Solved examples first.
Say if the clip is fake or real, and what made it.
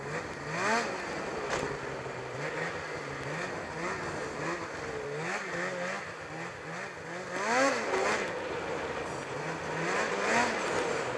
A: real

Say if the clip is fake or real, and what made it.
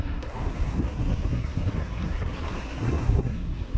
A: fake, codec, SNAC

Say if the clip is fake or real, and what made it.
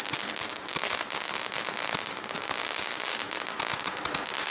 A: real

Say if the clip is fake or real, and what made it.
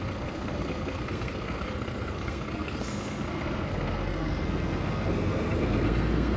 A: fake, codec, SNAC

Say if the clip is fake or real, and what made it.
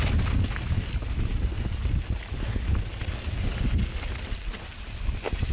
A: real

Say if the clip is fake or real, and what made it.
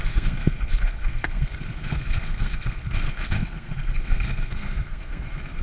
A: fake, codec, SNAC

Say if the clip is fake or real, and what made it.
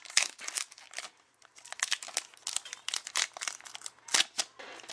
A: real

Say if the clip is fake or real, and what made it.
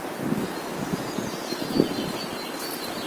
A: real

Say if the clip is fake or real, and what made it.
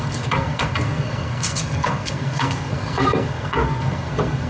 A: fake, codec, SNAC